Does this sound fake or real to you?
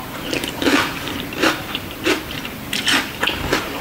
fake